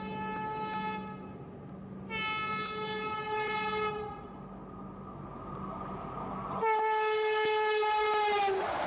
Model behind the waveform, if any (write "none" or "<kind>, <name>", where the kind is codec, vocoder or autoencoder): none